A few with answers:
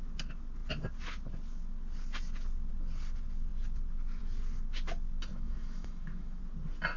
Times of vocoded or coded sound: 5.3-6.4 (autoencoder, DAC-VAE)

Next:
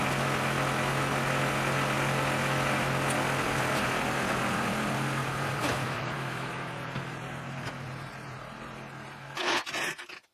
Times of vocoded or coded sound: 5.8-6.5 (autoencoder, DAC-VAE)